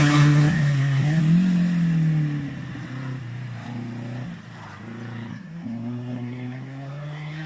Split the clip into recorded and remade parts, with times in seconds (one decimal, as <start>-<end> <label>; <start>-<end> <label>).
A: 0.0-1.2 remade; 1.2-5.3 recorded; 5.3-7.5 remade

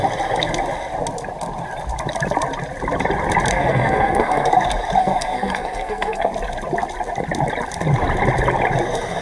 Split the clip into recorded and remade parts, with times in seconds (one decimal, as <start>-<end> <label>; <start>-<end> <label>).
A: 0.0-3.5 recorded; 3.5-4.5 remade; 4.5-5.0 recorded; 5.0-6.3 remade; 6.3-9.2 recorded

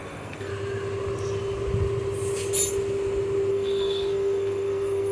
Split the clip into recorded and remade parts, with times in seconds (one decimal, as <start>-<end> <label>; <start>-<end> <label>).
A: 0.0-0.5 remade; 0.5-3.5 recorded; 3.5-5.1 remade